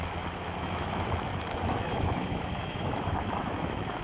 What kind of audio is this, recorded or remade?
remade